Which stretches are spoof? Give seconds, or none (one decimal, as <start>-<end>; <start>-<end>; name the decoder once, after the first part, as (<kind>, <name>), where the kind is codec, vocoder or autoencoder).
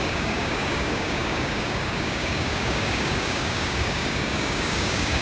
0.0-5.2 (codec, DAC)